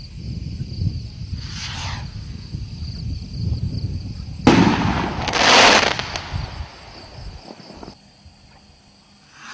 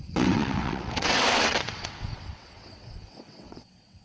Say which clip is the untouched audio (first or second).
first